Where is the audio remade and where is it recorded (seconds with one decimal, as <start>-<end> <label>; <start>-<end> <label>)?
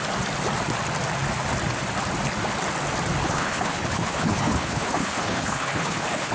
0.0-3.2 recorded; 3.2-6.3 remade